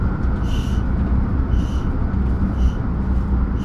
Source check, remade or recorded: recorded